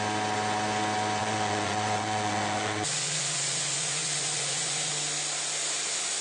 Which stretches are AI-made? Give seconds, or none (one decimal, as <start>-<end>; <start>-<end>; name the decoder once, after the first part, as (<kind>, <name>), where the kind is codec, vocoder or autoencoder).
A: 1.2-4.9 (vocoder, Vocos)